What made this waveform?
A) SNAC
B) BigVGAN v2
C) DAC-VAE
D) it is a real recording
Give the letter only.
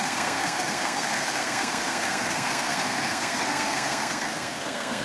A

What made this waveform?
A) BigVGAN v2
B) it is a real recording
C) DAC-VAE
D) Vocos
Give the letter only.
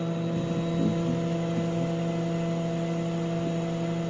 B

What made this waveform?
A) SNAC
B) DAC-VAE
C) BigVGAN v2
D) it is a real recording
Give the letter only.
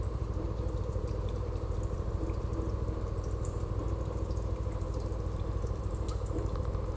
C